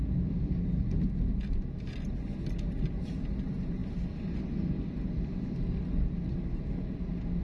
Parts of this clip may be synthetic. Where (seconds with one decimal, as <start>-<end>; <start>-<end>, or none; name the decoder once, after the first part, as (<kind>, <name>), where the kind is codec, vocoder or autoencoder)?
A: none